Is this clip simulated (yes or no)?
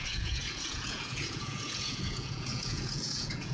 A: yes